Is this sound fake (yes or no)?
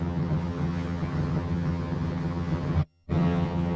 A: yes